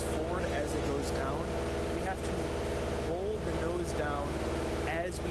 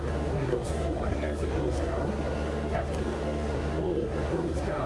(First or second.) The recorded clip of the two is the first